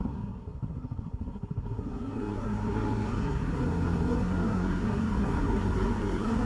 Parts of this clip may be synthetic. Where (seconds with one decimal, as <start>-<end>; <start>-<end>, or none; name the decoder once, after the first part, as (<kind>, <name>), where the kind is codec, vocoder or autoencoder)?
0.0-6.5 (codec, SNAC)